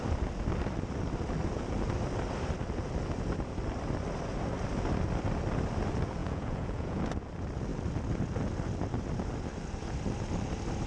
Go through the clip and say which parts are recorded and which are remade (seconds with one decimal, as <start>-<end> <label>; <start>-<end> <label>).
0.0-6.2 recorded; 6.2-7.0 remade; 7.0-10.9 recorded